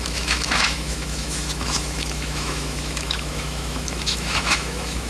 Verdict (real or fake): fake